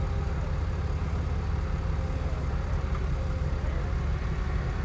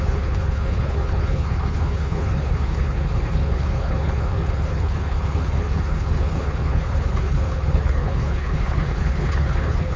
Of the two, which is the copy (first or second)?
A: second